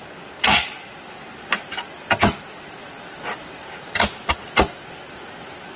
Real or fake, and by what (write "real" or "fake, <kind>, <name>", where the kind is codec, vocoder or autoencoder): fake, vocoder, BigVGAN v2